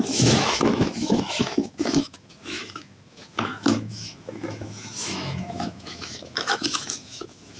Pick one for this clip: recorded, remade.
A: remade